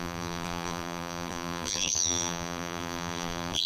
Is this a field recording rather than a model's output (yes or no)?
no